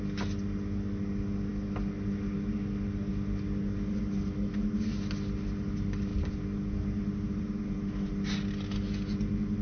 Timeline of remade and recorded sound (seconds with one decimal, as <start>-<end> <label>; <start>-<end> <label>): 0.0-9.6 recorded